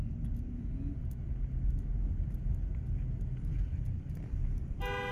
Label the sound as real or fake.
real